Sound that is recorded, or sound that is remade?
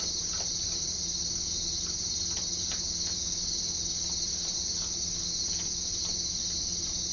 recorded